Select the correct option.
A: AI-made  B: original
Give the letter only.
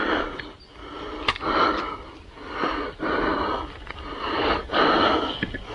B